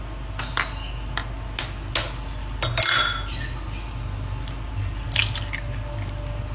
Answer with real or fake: real